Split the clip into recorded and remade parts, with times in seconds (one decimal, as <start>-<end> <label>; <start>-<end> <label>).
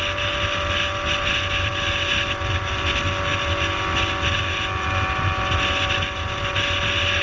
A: 0.0-7.2 recorded